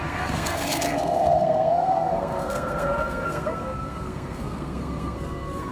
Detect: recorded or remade remade